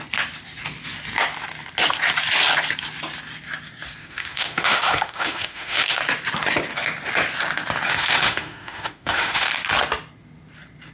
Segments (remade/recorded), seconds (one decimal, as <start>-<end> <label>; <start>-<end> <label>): 0.0-4.0 recorded; 4.0-6.0 remade; 6.0-7.9 recorded; 7.9-9.5 remade; 9.5-10.9 recorded